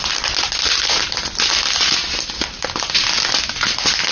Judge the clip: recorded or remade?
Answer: recorded